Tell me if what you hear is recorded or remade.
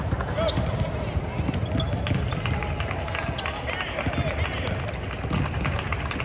recorded